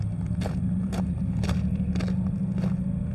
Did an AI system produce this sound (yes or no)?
no